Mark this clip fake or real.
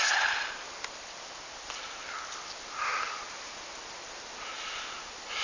real